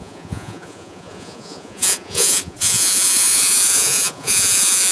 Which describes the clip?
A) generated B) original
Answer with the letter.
A